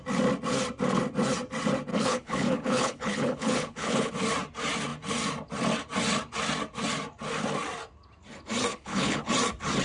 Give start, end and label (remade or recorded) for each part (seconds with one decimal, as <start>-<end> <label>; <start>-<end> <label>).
0.0-1.9 recorded; 1.9-4.1 remade; 4.1-8.7 recorded; 8.7-9.3 remade; 9.3-9.8 recorded

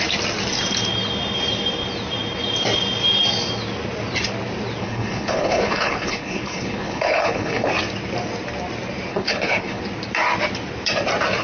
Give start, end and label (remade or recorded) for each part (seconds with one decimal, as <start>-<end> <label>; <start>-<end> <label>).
0.0-4.8 recorded; 4.8-7.7 remade; 7.7-9.1 recorded; 9.1-9.8 remade; 9.8-11.4 recorded

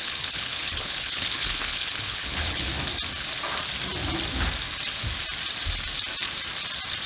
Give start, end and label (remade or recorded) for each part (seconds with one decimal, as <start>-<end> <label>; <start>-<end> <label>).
0.0-2.7 remade; 2.7-7.1 recorded

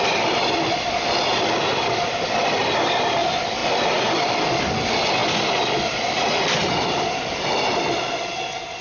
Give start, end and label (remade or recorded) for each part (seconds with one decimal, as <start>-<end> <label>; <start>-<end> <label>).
0.0-8.8 recorded

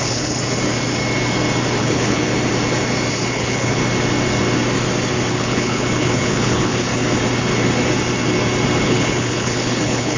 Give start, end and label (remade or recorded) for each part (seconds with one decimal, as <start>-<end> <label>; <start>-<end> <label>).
0.0-0.4 remade; 0.4-1.8 recorded; 1.8-2.3 remade; 2.3-3.3 recorded; 3.3-3.8 remade; 3.8-5.3 recorded; 5.3-6.9 remade; 6.9-8.8 recorded; 8.8-10.2 remade

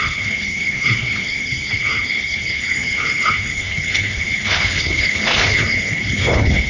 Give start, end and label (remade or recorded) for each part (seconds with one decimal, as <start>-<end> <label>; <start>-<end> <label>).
0.0-6.7 remade

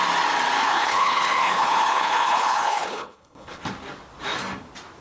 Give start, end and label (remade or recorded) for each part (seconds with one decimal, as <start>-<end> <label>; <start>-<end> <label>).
0.0-0.6 recorded; 0.6-3.6 remade; 3.6-5.0 recorded

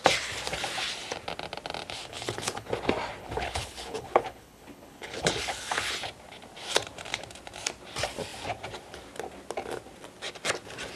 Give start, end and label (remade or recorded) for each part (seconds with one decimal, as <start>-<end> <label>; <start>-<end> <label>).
0.0-2.1 recorded; 2.1-2.7 remade; 2.7-3.2 recorded; 3.2-5.9 remade; 5.9-11.0 recorded